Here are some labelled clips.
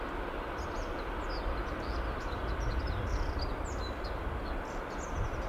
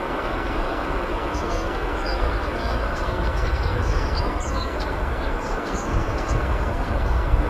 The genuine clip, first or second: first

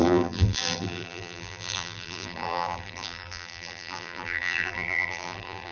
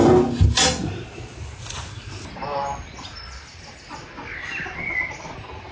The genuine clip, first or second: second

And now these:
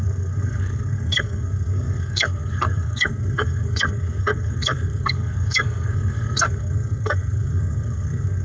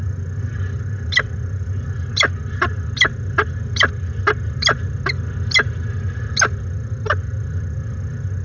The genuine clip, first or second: second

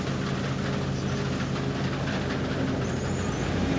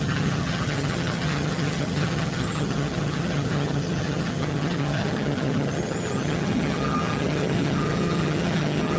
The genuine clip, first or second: first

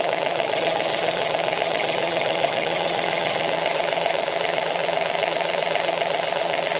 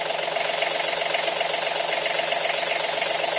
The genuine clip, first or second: second